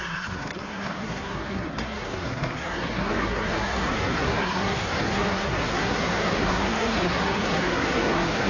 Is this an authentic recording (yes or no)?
no